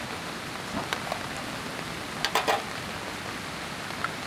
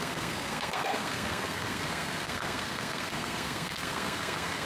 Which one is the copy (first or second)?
second